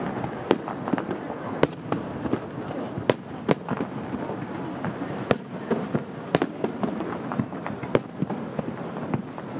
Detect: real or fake real